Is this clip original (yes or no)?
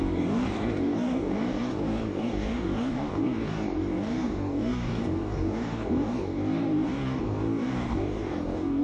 no